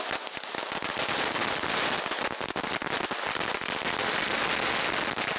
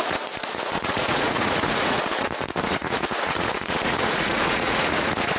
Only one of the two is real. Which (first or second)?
first